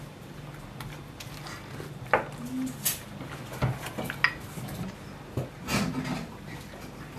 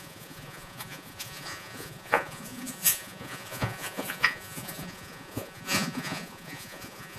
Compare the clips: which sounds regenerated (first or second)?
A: second